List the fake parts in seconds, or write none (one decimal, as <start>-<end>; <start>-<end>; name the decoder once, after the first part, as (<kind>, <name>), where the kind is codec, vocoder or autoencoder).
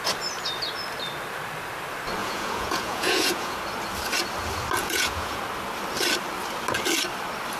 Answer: 2.2-3.6 (vocoder, Vocos); 4.8-5.4